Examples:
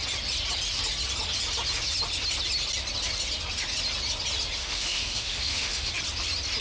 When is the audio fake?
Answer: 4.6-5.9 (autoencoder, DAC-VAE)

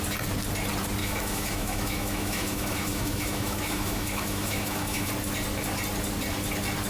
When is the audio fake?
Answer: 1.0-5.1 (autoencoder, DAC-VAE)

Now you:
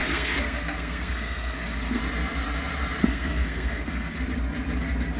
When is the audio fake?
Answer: 0.0-2.0 (codec, SNAC); 3.0-4.2